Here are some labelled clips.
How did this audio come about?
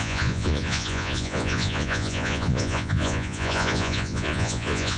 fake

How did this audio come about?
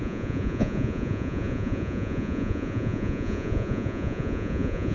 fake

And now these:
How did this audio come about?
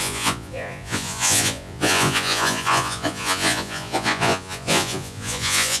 fake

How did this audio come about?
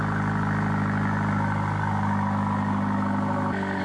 real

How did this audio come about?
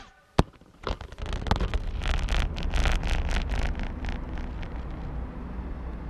real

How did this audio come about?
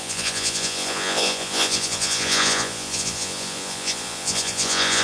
fake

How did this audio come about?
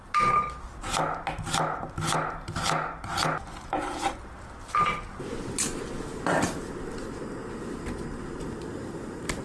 real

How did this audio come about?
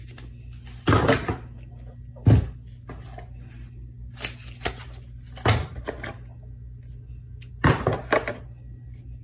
real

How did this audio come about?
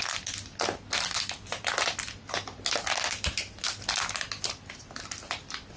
real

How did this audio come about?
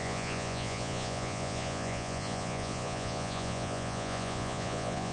fake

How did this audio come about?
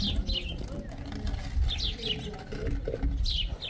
real